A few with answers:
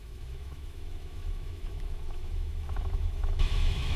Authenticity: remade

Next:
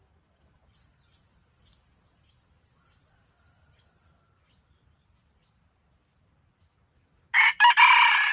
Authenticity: recorded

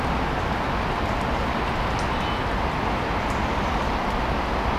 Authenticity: recorded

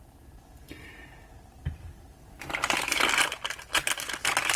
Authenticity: recorded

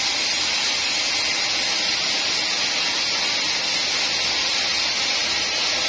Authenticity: recorded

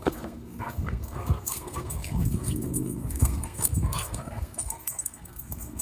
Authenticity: remade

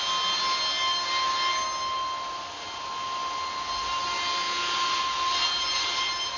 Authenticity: recorded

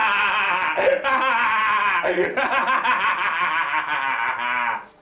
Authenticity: recorded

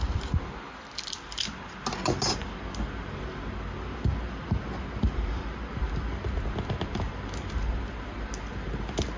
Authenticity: recorded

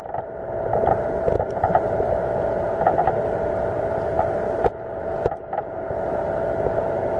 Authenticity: recorded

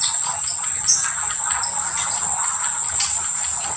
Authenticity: recorded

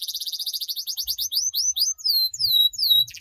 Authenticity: remade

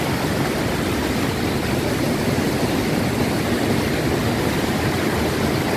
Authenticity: recorded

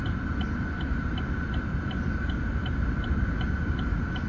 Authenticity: recorded